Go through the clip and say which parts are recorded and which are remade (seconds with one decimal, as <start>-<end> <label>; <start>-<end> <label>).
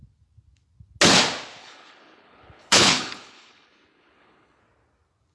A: 0.0-1.6 recorded; 1.6-4.6 remade; 4.6-5.3 recorded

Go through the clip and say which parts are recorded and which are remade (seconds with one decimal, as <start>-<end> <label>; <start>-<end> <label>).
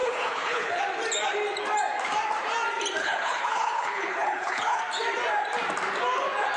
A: 0.0-0.8 remade; 0.8-3.0 recorded; 3.0-4.8 remade; 4.8-6.6 recorded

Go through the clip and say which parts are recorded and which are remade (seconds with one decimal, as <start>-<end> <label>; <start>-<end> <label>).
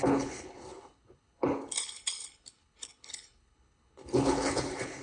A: 0.0-5.0 remade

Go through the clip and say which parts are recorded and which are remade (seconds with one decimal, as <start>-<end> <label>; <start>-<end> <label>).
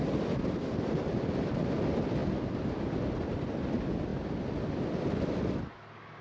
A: 0.0-6.2 recorded